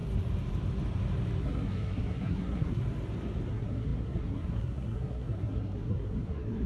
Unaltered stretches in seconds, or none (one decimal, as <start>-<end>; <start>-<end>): 0.0-1.4; 2.8-3.5